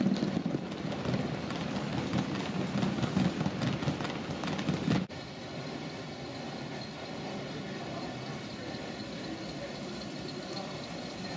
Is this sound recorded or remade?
recorded